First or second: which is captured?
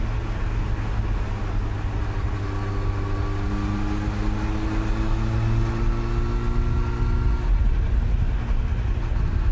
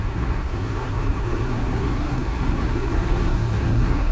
first